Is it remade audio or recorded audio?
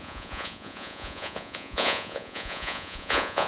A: remade